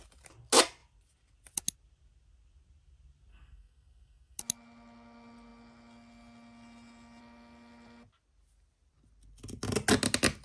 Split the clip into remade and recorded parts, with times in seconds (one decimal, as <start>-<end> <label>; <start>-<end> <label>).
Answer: 0.0-3.3 recorded; 3.3-4.4 remade; 4.4-10.4 recorded